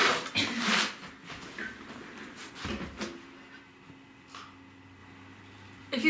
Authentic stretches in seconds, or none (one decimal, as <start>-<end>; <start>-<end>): 0.0-6.1